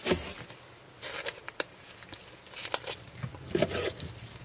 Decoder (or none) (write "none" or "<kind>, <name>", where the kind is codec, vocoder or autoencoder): none